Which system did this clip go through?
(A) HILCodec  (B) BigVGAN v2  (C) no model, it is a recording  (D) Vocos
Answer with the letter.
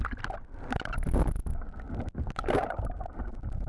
C